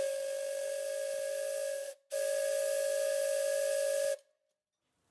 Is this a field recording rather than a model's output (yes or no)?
yes